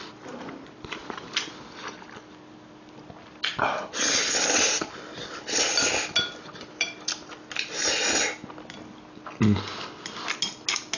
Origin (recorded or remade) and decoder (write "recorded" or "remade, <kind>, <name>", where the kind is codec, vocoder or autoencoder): recorded